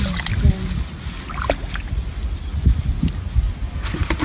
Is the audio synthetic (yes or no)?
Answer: no